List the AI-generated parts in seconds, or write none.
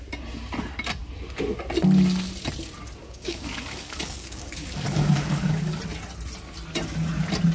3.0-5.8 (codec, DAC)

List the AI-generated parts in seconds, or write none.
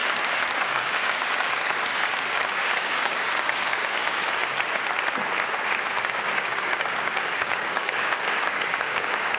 0.0-4.2 (codec, DAC); 5.9-9.4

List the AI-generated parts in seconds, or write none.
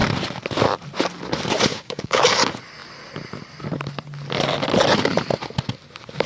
1.7-2.2 (codec, DAC)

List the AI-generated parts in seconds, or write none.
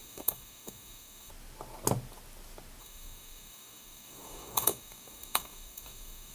0.0-1.3 (codec, DAC); 2.8-6.3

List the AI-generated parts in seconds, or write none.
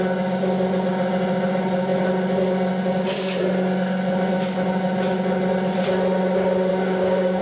6.7-7.4 (codec, DAC)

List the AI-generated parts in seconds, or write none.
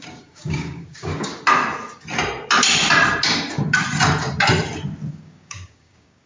0.0-1.3 (codec, DAC); 5.1-6.3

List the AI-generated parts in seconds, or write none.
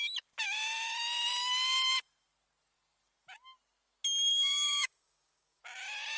4.3-5.6 (codec, DAC)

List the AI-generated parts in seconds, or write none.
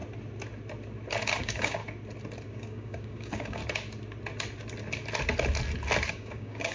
1.4-1.8 (codec, DAC); 2.5-3.6; 6.1-6.7